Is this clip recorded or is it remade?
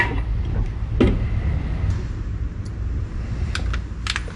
recorded